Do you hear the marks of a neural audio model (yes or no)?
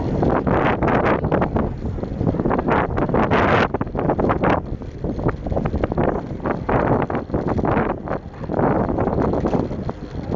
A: no